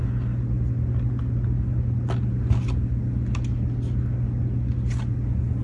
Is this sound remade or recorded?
recorded